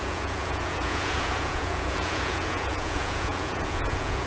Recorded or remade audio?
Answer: remade